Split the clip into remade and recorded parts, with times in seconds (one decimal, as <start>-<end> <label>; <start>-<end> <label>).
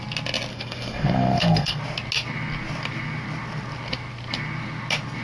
0.0-0.5 recorded; 0.5-1.8 remade; 1.8-5.2 recorded